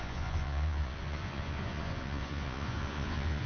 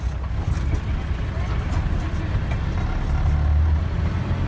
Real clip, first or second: second